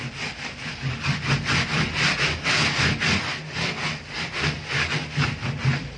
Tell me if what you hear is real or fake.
real